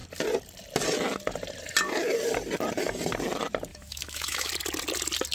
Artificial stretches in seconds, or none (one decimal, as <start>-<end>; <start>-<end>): 3.7-4.5